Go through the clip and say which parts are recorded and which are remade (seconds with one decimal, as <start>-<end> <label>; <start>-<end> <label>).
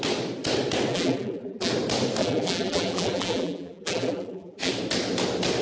0.0-0.9 recorded; 0.9-1.7 remade; 1.7-2.2 recorded; 2.2-4.7 remade; 4.7-5.6 recorded